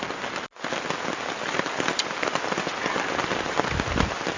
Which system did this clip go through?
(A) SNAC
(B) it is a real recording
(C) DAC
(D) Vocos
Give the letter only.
B